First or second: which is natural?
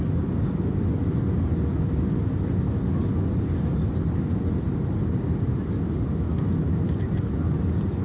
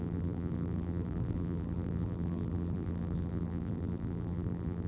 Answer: first